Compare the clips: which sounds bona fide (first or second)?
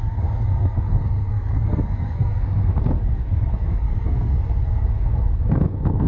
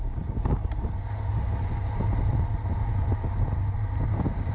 second